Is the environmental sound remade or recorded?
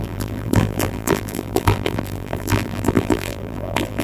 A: remade